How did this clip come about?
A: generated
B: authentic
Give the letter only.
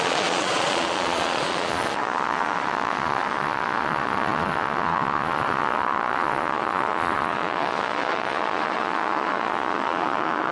A